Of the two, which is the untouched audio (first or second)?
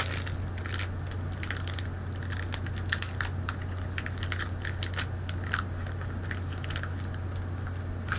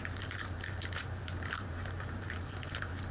first